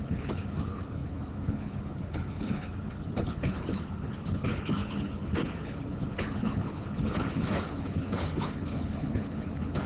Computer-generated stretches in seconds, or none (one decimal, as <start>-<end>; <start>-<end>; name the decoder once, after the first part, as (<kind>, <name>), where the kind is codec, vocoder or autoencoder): 0.0-9.9 (codec, HILCodec)